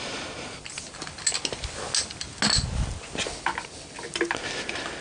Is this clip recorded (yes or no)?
yes